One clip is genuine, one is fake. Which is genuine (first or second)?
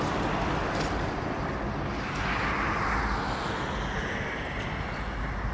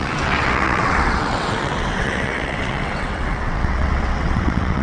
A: first